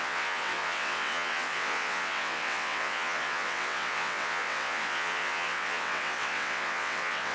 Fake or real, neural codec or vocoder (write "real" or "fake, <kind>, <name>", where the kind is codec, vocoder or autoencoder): fake, vocoder, WaveNeXt